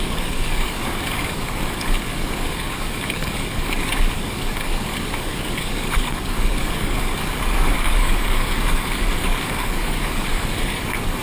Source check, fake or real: fake